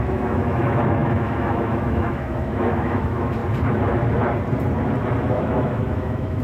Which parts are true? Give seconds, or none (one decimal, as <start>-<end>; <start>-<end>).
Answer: 3.4-5.3